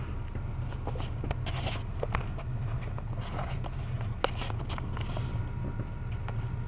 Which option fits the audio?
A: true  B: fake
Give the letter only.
A